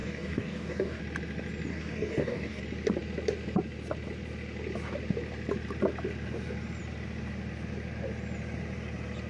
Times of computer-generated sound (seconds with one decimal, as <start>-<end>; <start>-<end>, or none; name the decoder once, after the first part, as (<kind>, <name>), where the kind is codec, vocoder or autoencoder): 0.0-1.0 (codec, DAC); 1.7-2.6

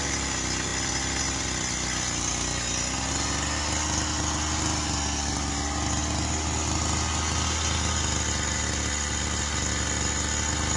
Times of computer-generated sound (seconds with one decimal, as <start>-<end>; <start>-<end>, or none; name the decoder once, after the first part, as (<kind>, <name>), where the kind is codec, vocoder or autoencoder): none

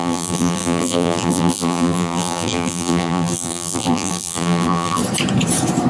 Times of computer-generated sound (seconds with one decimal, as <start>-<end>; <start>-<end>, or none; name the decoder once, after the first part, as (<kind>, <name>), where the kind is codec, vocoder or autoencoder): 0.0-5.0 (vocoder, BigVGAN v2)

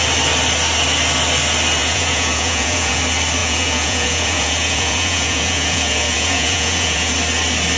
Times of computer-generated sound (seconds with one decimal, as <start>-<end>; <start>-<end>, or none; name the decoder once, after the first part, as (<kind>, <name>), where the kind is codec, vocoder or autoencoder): 1.8-3.0 (vocoder, Vocos); 3.4-7.1

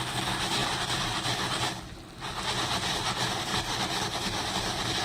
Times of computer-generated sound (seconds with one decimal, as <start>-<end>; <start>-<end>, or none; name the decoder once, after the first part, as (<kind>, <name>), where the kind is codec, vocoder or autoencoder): none

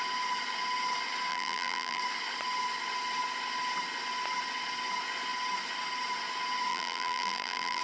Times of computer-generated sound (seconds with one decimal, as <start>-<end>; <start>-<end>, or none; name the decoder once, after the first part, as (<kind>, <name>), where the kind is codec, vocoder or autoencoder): 1.3-2.0 (vocoder, BigVGAN v2); 6.7-7.8

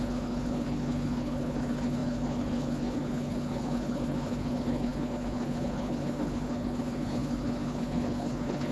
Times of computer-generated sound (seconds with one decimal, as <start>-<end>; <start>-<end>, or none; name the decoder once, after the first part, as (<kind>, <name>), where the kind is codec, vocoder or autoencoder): 0.0-8.7 (codec, HILCodec)